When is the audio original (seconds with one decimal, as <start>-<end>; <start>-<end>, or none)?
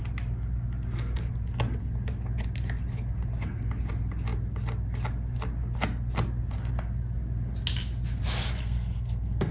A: 0.0-8.6